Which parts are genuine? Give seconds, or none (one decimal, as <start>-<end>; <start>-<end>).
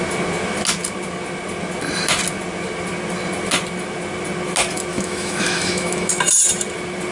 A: 0.0-4.9; 6.1-7.1